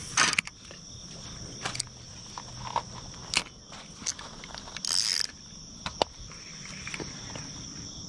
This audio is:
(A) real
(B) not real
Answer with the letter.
A